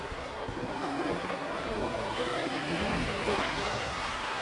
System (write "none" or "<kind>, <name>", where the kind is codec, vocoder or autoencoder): codec, SNAC